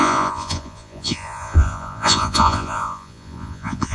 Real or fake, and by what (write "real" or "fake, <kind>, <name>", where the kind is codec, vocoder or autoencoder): fake, vocoder, Vocos